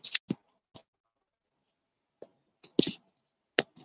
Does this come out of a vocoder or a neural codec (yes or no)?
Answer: no